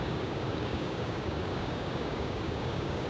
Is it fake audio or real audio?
fake